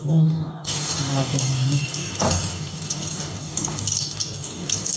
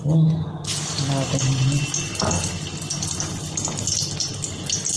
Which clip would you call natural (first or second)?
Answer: second